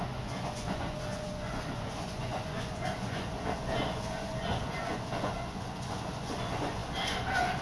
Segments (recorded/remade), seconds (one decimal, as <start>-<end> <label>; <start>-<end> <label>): 0.0-7.6 remade